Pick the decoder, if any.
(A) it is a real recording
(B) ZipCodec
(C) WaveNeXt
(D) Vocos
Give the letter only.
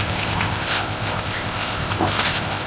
B